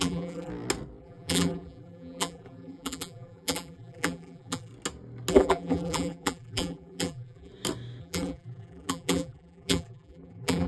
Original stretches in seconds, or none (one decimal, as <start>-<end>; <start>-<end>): 0.5-1.0; 4.7-5.3; 7.5-8.0